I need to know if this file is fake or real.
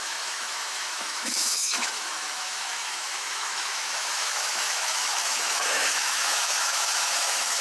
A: fake